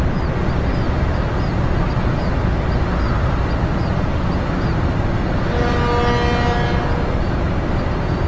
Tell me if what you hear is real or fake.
real